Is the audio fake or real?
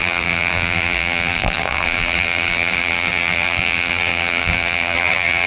fake